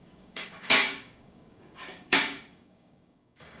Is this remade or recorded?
remade